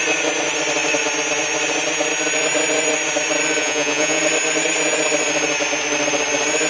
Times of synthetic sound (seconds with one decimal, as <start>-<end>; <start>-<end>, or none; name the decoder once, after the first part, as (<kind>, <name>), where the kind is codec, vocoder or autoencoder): 3.6-4.2 (vocoder, Vocos)